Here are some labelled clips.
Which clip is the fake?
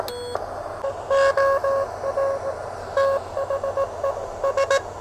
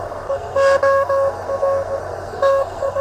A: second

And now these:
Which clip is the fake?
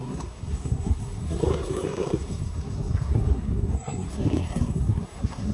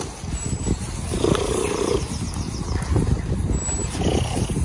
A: first